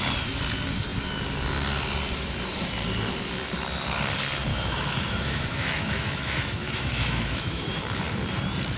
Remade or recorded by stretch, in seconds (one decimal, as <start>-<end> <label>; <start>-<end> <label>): 0.0-4.5 recorded; 4.5-7.8 remade; 7.8-8.8 recorded